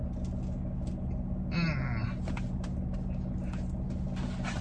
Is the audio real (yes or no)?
yes